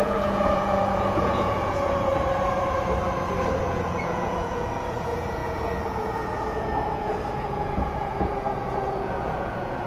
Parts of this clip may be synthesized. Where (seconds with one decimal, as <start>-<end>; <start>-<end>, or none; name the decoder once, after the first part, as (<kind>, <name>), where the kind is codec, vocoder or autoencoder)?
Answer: 0.0-2.1 (vocoder, Vocos); 3.6-9.9